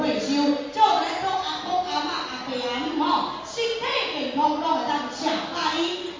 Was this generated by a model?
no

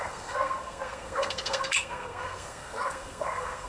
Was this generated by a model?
yes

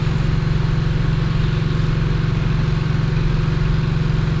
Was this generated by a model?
no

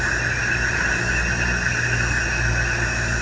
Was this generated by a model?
no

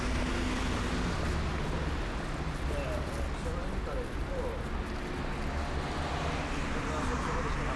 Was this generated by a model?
no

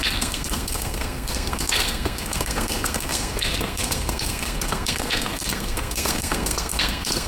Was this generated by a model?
yes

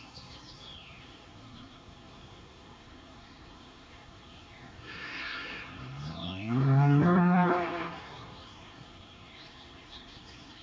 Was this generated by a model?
yes